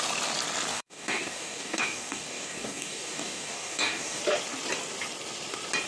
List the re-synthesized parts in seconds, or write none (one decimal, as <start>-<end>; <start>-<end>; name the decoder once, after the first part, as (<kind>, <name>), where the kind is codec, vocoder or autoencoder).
0.7-4.2 (codec, DAC)